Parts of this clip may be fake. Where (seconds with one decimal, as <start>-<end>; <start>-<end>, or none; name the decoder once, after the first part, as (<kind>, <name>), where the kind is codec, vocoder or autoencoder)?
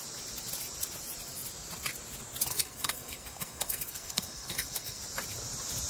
2.5-5.0 (codec, SNAC)